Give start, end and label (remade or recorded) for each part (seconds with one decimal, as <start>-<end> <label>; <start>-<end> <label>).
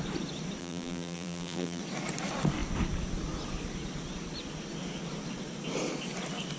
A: 0.0-0.6 recorded; 0.6-1.8 remade; 1.8-6.6 recorded